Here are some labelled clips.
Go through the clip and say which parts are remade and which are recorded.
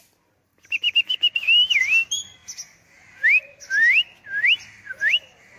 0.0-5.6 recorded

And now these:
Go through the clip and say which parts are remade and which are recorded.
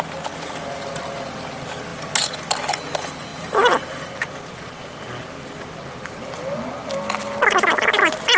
0.0-8.4 recorded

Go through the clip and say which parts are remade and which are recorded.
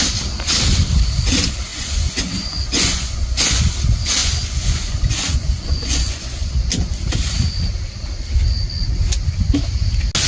0.0-1.7 recorded; 1.7-3.7 remade; 3.7-4.2 recorded; 4.2-6.5 remade; 6.5-10.3 recorded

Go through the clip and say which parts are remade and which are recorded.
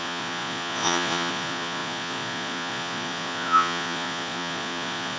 0.0-5.2 remade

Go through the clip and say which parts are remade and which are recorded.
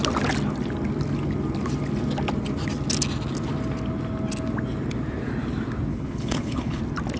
0.0-5.9 recorded; 5.9-6.8 remade; 6.8-7.2 recorded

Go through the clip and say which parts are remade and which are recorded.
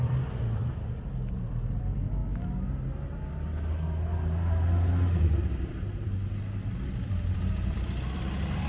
0.0-0.6 remade; 0.6-1.3 recorded; 1.3-2.2 remade; 2.2-6.0 recorded; 6.0-8.7 remade